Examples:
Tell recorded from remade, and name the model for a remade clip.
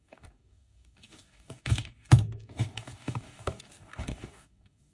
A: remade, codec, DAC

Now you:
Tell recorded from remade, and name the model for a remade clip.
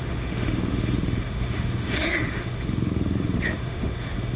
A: remade, autoencoder, DAC-VAE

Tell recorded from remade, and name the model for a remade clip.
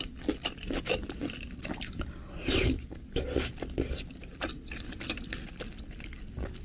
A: remade, vocoder, BigVGAN v2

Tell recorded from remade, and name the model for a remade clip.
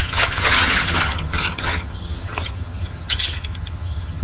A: remade, vocoder, HiFi-GAN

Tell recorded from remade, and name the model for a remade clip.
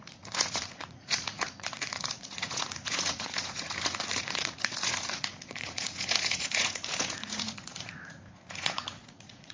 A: remade, vocoder, Vocos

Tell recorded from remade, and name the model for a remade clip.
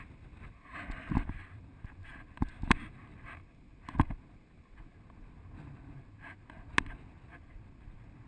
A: recorded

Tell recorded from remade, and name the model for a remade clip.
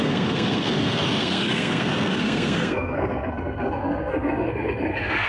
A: remade, codec, SNAC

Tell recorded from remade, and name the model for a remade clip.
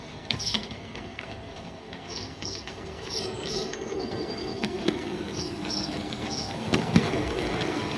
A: remade, codec, SNAC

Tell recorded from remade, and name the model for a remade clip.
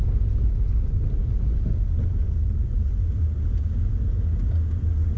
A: recorded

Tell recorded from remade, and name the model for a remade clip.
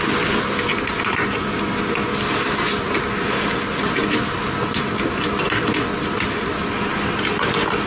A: recorded